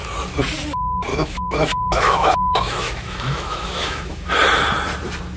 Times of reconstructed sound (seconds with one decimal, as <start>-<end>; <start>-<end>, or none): 1.1-4.3